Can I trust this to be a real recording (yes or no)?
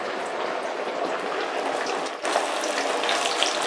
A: yes